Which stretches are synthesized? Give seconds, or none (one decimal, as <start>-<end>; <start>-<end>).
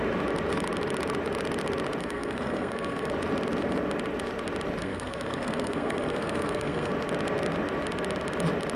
2.0-3.1; 4.8-6.9